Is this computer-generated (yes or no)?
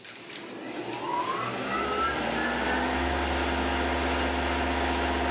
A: no